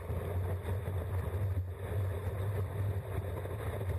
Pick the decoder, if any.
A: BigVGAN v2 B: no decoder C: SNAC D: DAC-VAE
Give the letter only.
B